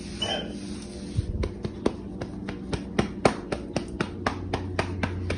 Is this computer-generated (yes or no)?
no